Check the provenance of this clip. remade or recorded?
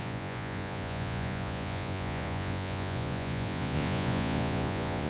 remade